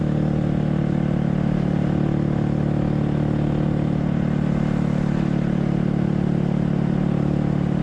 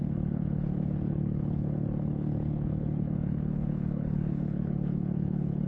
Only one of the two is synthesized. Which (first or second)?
second